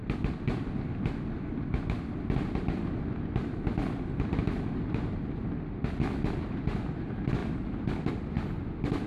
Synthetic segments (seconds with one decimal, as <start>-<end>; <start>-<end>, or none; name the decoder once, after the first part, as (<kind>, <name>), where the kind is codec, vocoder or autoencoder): none